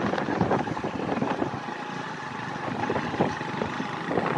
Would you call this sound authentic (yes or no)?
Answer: yes